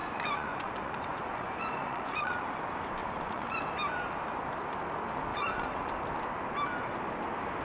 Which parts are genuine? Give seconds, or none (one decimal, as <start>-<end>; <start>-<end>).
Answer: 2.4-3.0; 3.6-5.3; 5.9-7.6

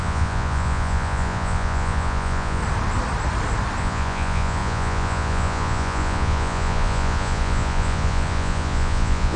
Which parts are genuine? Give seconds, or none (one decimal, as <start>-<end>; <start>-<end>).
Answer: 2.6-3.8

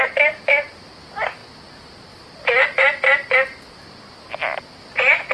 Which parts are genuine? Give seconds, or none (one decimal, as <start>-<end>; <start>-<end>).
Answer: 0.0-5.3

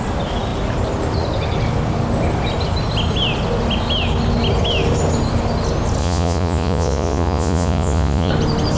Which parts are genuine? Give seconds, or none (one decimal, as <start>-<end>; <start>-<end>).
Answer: 0.0-6.0; 8.3-8.8

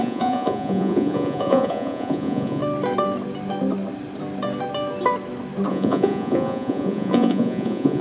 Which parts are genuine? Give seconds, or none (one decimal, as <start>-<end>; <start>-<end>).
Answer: 2.6-5.7

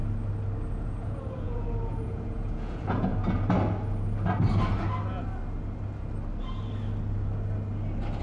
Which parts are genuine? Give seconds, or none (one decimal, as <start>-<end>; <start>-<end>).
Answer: 0.0-0.7; 3.1-8.2

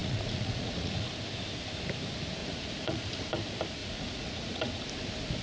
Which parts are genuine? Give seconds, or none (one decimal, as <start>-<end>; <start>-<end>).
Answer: 1.1-2.4; 3.3-3.8; 4.8-5.4

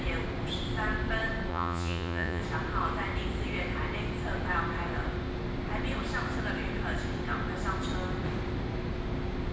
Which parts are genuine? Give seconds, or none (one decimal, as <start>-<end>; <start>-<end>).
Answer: 0.0-1.5; 2.4-9.5